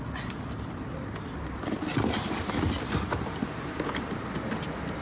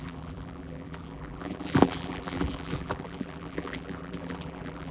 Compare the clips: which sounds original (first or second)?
first